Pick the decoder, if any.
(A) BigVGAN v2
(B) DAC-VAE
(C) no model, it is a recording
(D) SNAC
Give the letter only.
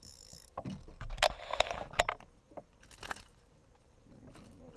C